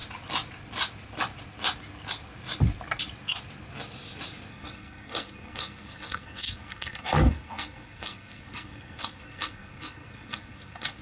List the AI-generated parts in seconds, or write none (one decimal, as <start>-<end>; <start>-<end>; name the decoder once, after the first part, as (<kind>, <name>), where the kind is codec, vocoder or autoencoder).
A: 4.5-11.0 (codec, SNAC)